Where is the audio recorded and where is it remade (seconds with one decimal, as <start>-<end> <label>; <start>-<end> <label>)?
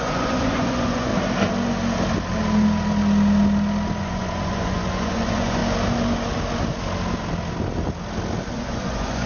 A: 0.0-1.1 remade; 1.1-4.0 recorded; 4.0-5.6 remade; 5.6-8.5 recorded; 8.5-9.3 remade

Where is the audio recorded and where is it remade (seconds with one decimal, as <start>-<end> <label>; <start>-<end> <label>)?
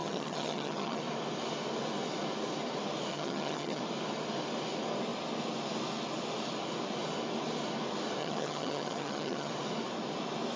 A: 0.0-1.0 remade; 1.0-3.1 recorded; 3.1-3.8 remade; 3.8-8.2 recorded; 8.2-9.5 remade; 9.5-10.6 recorded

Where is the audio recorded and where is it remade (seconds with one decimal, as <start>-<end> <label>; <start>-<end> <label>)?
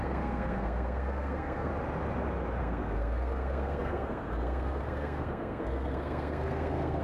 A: 0.0-1.7 remade; 1.7-2.6 recorded; 2.6-7.0 remade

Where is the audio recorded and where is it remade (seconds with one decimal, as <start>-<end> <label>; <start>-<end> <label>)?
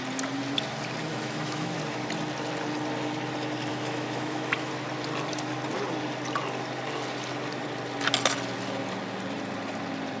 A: 0.0-1.1 recorded; 1.1-1.8 remade; 1.8-3.7 recorded; 3.7-4.7 remade; 4.7-10.2 recorded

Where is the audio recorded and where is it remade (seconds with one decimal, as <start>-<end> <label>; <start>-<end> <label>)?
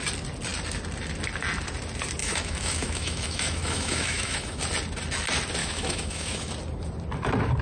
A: 0.0-2.2 recorded; 2.2-4.6 remade; 4.6-5.6 recorded; 5.6-6.5 remade; 6.5-7.6 recorded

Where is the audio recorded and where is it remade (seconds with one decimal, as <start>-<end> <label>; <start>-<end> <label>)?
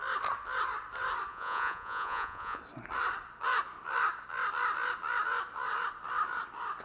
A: 0.0-1.3 recorded; 1.3-2.6 remade; 2.6-6.8 recorded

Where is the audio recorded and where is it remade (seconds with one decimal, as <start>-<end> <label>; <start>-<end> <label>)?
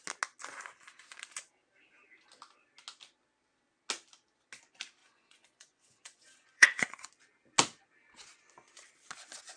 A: 0.0-5.0 recorded; 5.0-7.1 remade; 7.1-9.6 recorded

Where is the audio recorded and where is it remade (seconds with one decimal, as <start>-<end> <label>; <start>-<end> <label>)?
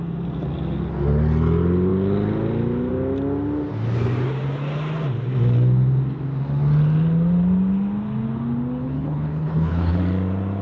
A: 0.0-8.8 recorded; 8.8-10.0 remade; 10.0-10.6 recorded